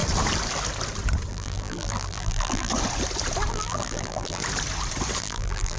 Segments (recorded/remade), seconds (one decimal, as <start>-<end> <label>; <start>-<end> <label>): 0.0-1.3 recorded; 1.3-2.7 remade; 2.7-3.5 recorded; 3.5-4.4 remade; 4.4-5.2 recorded; 5.2-5.8 remade